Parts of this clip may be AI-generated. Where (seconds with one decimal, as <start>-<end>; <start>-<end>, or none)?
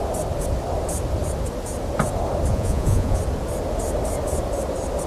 2.5-3.2